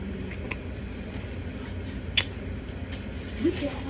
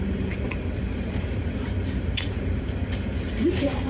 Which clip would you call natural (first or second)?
first